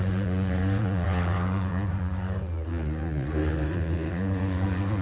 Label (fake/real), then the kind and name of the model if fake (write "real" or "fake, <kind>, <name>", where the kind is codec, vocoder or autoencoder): fake, vocoder, Vocos